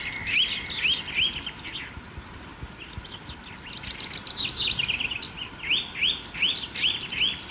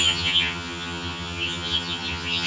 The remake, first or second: second